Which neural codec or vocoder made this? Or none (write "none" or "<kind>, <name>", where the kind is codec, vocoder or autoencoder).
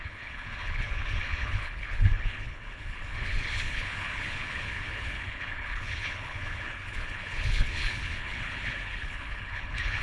codec, HILCodec